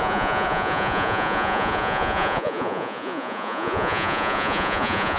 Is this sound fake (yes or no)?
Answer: yes